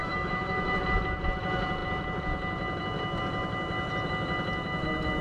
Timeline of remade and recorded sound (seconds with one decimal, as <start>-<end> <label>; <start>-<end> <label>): 0.0-0.8 remade; 0.8-5.2 recorded